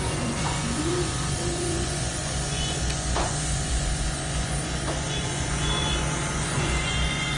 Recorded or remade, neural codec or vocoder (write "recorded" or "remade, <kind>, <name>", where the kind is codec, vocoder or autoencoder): remade, vocoder, Vocos